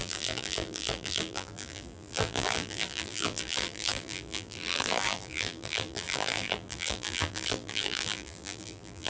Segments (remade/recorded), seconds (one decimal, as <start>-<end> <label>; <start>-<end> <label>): 0.0-9.1 remade